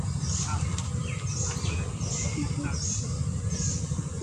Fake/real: real